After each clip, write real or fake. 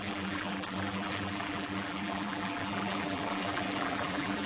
fake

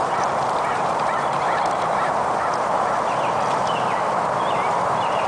fake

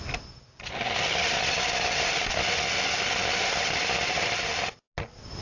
real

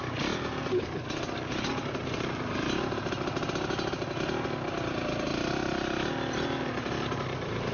real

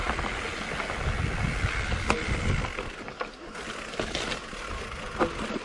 real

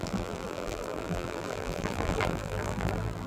fake